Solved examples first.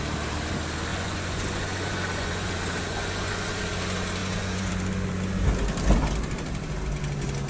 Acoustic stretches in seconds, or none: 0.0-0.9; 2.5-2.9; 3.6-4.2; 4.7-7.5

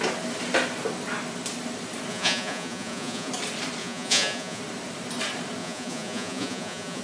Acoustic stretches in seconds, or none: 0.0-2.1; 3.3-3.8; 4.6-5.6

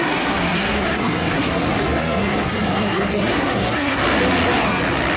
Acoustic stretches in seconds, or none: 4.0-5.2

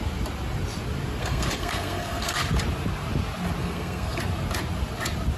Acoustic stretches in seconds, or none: 0.0-1.2; 2.4-3.6; 4.2-5.4

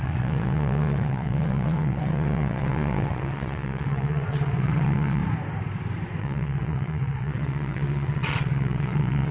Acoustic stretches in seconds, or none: 5.2-6.2

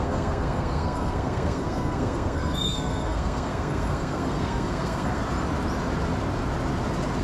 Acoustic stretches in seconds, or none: 5.2-7.2

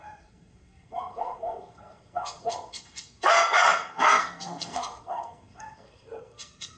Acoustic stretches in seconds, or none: none

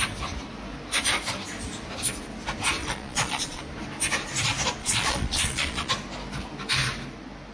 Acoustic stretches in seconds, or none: 0.0-2.8; 3.6-4.8; 5.9-7.5